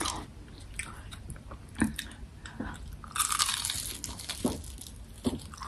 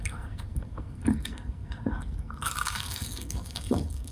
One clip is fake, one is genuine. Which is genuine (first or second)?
first